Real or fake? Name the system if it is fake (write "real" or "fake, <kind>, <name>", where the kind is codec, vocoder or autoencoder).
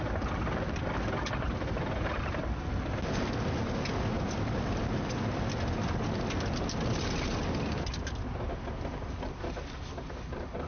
real